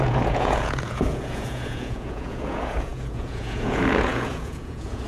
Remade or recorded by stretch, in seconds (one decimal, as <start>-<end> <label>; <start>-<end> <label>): 0.0-5.1 remade